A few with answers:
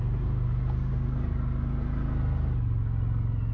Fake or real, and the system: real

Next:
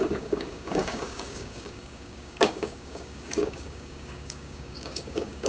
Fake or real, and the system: fake, codec, DAC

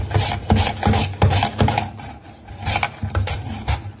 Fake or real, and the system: real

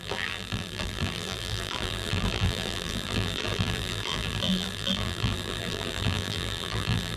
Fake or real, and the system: fake, vocoder, BigVGAN v2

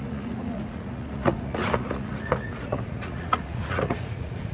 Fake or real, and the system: fake, vocoder, Vocos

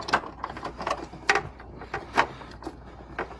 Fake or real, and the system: real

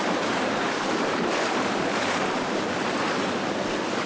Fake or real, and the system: fake, vocoder, BigVGAN v2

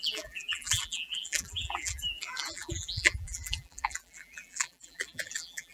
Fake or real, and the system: fake, vocoder, BigVGAN v2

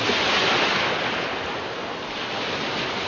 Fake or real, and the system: real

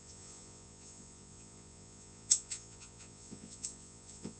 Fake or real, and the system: fake, vocoder, Vocos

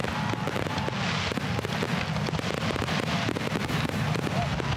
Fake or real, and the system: real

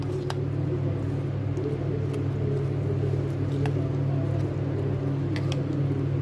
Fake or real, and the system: real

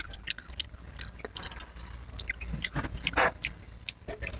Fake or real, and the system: real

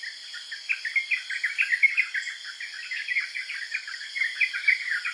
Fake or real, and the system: real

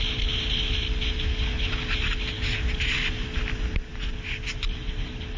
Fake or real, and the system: real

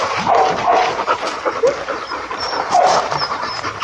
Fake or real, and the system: fake, vocoder, BigVGAN v2